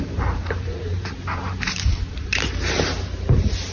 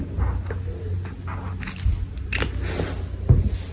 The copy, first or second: first